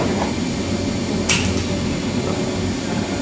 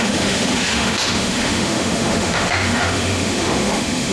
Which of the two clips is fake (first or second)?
second